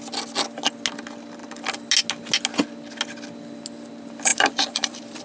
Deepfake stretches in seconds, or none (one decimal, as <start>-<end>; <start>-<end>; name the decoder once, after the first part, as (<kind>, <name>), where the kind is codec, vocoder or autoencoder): 4.3-5.2 (vocoder, BigVGAN v2)